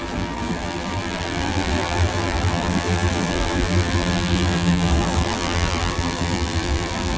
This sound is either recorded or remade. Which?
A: remade